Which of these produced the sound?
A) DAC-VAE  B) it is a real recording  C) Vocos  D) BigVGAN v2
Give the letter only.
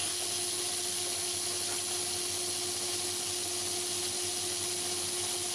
B